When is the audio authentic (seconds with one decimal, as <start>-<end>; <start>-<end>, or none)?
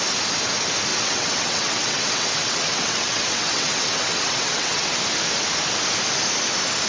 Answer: 0.0-0.9; 5.0-6.9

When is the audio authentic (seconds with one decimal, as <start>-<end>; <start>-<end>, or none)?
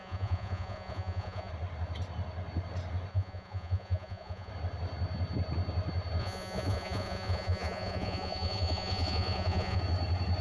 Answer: 1.5-3.1; 4.5-6.2; 9.8-10.4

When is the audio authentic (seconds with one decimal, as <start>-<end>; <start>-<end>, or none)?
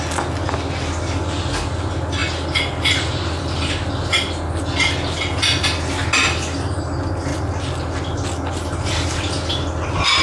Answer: 0.0-10.2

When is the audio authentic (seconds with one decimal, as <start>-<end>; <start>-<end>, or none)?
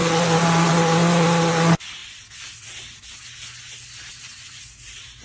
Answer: 0.0-5.2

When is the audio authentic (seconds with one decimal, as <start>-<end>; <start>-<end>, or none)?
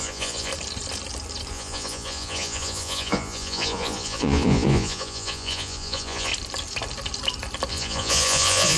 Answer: 0.5-1.5; 6.3-7.7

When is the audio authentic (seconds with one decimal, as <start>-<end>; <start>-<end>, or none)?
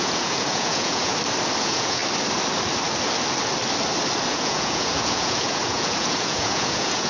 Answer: 1.1-1.6; 2.0-4.3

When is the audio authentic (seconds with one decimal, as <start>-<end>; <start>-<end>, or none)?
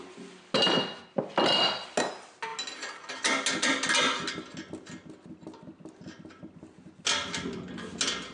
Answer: 0.0-8.3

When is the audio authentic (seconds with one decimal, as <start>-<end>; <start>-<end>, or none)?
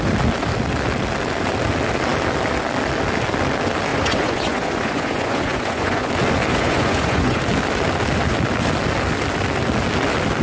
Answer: 0.0-3.9; 6.1-6.5; 7.4-10.4